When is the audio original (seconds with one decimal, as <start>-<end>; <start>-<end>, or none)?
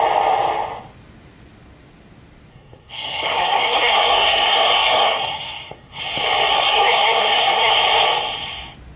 0.0-2.5; 6.0-6.5; 7.7-9.0